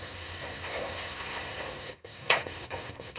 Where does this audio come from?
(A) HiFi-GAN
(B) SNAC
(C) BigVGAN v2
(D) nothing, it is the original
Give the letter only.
B